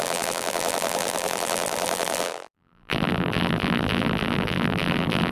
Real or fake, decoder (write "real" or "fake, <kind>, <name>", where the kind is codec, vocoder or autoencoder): fake, vocoder, BigVGAN v2